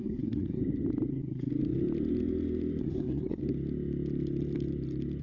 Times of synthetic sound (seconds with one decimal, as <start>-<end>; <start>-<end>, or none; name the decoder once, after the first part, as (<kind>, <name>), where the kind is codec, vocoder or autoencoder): 0.0-0.6 (codec, SNAC); 1.1-1.5; 2.8-3.4